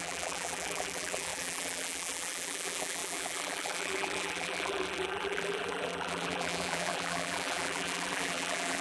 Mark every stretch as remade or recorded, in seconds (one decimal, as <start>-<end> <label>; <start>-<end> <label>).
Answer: 0.0-8.8 remade